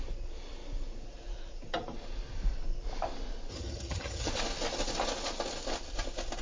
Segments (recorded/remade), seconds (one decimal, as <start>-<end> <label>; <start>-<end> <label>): 0.0-3.5 recorded; 3.5-4.3 remade; 4.3-6.4 recorded

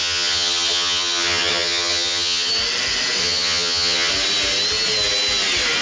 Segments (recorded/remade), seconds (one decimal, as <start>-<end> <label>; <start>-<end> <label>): 0.0-2.5 remade; 2.5-3.2 recorded; 3.2-4.1 remade; 4.1-5.8 recorded

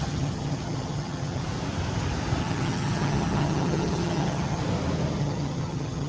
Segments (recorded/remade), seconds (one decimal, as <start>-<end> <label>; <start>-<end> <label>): 0.0-1.4 remade; 1.4-2.4 recorded; 2.4-4.6 remade; 4.6-5.2 recorded; 5.2-6.1 remade